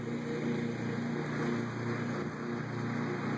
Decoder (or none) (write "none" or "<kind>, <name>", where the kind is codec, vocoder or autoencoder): none